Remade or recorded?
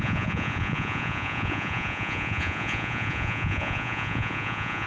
remade